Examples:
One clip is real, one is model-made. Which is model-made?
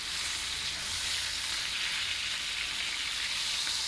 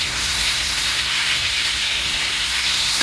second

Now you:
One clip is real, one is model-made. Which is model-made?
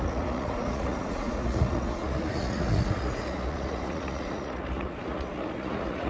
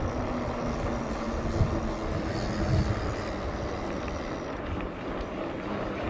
first